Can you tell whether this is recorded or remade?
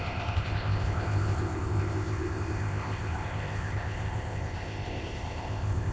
remade